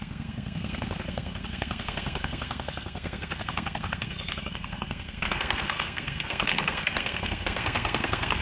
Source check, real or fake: fake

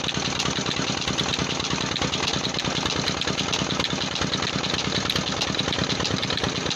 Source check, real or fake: real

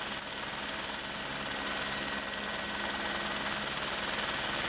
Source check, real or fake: real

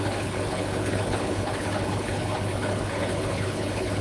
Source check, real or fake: fake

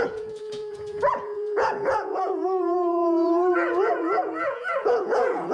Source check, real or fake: fake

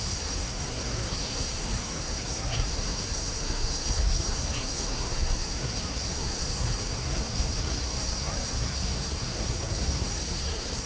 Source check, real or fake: fake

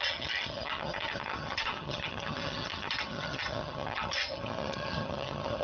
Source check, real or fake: fake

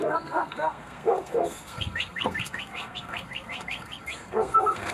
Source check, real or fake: fake